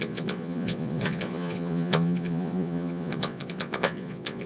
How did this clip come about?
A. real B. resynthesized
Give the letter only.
B